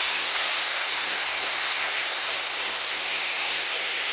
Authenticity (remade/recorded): remade